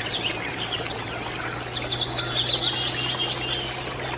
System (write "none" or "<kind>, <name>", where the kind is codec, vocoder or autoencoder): none